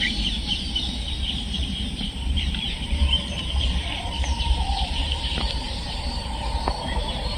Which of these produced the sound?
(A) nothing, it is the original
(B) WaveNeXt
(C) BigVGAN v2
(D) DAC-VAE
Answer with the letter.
C